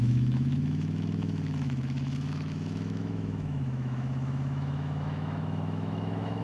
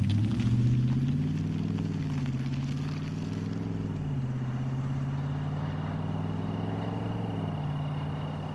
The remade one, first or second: first